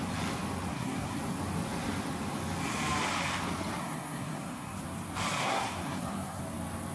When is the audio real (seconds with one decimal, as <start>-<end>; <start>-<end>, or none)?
0.0-0.7; 1.2-3.8; 4.8-5.4; 6.4-6.9